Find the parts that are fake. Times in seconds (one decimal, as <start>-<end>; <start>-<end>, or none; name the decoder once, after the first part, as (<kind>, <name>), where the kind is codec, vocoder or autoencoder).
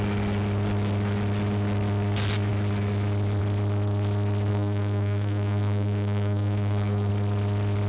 4.5-7.1 (codec, SNAC)